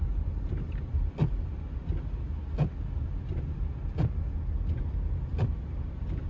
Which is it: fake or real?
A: real